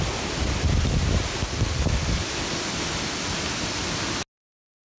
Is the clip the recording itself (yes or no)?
yes